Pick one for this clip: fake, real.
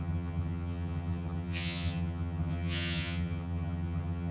fake